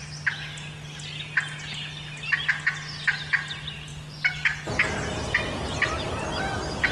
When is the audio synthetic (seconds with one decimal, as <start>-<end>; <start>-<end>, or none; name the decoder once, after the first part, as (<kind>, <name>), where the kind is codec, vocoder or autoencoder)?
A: none